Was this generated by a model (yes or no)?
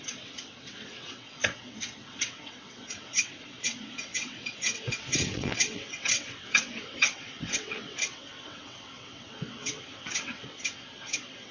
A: yes